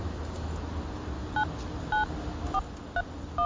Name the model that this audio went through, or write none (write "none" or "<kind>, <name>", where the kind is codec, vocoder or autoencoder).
none